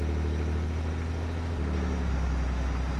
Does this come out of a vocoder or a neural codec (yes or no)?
no